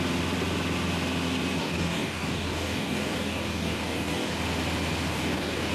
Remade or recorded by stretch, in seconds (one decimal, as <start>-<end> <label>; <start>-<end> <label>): 0.0-1.6 recorded; 1.6-4.3 remade; 4.3-5.1 recorded; 5.1-5.7 remade